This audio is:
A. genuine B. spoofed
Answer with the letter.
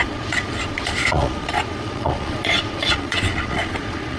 B